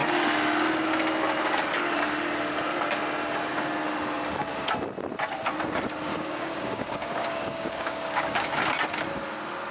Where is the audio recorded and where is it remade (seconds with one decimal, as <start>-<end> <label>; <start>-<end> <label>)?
0.0-6.1 recorded; 6.1-8.7 remade; 8.7-9.7 recorded